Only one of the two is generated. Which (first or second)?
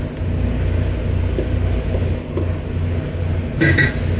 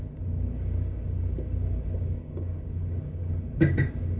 second